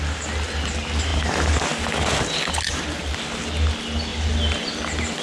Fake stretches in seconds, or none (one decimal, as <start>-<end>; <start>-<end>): none